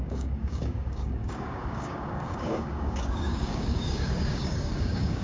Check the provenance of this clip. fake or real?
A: fake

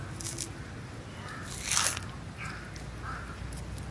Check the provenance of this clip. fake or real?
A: real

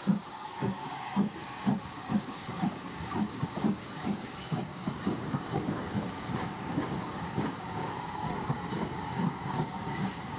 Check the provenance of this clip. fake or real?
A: fake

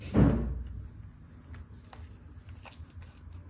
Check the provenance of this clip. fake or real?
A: real